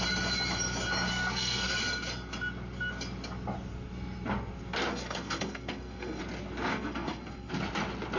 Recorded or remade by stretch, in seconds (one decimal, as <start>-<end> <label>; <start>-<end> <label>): 0.0-1.1 recorded; 1.1-1.7 remade; 1.7-4.9 recorded; 4.9-6.2 remade; 6.2-6.7 recorded; 6.7-7.5 remade; 7.5-8.2 recorded